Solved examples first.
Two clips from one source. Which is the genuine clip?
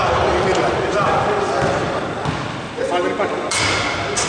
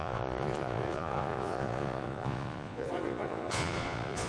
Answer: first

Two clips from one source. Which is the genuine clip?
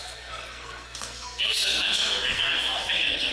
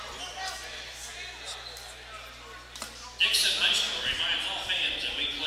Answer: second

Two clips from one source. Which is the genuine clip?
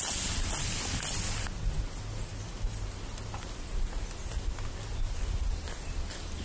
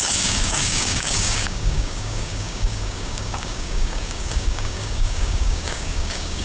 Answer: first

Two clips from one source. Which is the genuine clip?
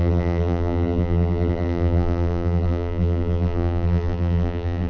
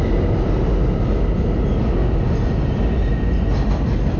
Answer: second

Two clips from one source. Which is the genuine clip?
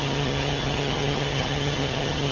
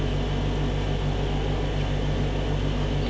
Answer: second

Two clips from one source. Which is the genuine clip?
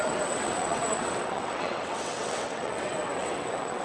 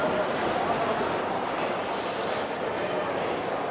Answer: second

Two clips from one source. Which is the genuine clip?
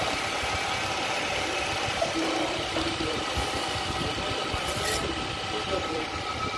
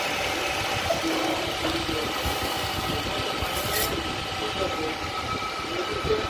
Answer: second